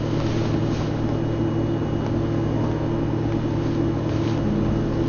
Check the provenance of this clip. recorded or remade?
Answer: recorded